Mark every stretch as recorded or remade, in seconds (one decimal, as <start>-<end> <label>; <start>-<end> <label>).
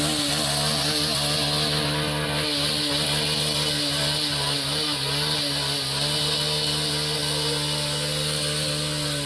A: 0.0-9.3 recorded